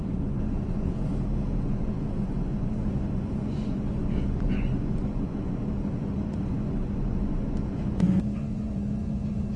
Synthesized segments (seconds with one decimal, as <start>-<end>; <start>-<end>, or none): 0.0-1.1; 1.6-9.6

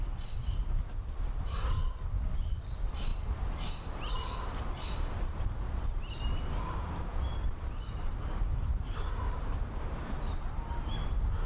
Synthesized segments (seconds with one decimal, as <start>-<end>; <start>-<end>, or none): 7.1-9.4

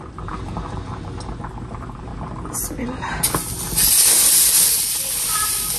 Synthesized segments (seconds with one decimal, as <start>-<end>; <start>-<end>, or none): none

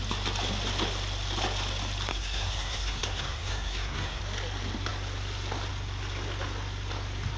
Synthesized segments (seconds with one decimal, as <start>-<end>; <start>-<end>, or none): 2.1-4.2

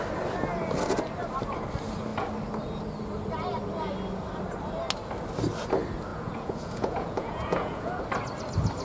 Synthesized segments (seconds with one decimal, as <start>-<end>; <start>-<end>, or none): 6.1-8.0